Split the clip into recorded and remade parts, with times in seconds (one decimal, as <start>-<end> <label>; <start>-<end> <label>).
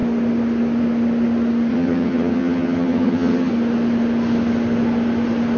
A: 0.0-1.7 recorded; 1.7-3.5 remade; 3.5-5.6 recorded